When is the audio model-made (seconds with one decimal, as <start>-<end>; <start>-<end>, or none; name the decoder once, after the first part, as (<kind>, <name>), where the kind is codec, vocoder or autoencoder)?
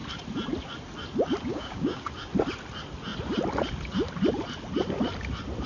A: 1.5-2.1 (codec, DAC)